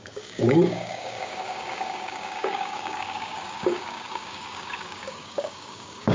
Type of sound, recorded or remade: remade